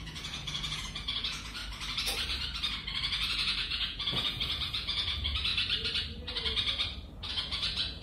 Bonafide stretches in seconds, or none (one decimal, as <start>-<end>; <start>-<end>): 1.6-3.3; 5.5-7.3